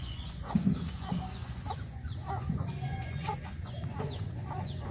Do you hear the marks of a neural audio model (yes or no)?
yes